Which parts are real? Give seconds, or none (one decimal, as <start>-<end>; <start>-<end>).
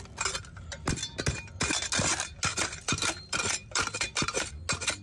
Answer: 0.0-2.5; 4.5-5.0